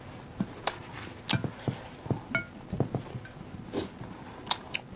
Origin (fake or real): real